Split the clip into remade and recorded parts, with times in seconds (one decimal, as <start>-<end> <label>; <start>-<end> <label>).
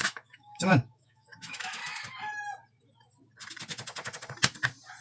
0.0-1.8 remade; 1.8-5.0 recorded